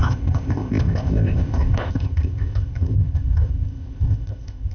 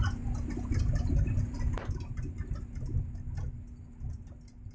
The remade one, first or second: first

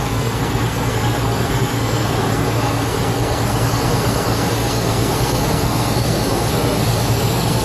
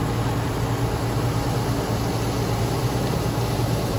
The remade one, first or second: first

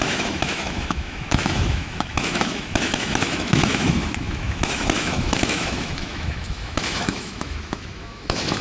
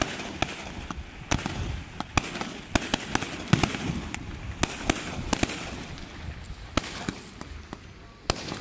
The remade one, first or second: first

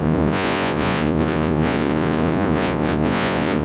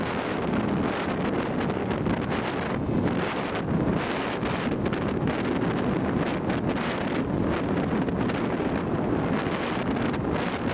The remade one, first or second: first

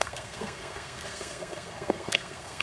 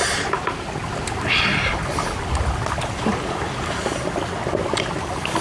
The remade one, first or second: first